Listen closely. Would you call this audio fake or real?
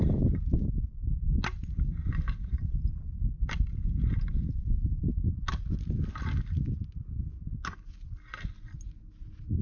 real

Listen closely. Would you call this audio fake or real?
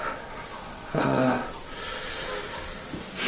real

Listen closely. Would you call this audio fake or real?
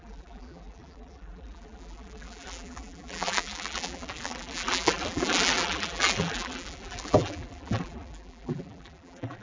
fake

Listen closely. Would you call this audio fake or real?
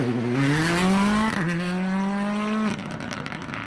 real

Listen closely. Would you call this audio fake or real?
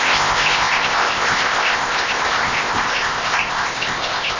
fake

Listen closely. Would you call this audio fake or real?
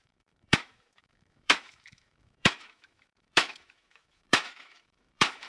fake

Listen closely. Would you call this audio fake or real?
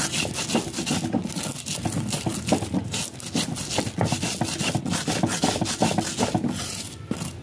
real